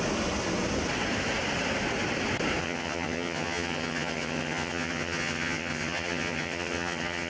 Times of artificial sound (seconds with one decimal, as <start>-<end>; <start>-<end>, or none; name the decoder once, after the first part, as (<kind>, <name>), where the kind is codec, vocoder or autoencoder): 2.6-7.3 (vocoder, HiFi-GAN)